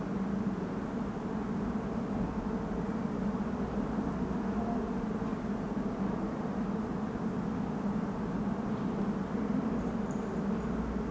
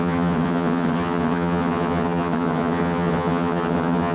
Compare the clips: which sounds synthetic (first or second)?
second